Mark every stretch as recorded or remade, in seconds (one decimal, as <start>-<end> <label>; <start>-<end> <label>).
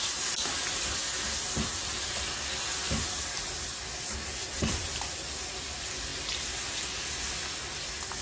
0.0-8.2 recorded